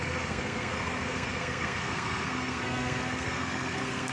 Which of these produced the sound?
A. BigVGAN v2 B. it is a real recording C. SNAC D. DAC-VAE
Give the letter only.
C